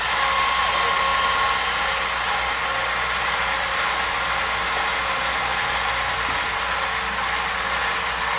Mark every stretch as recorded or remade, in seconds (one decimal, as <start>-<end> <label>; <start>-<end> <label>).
0.0-8.4 recorded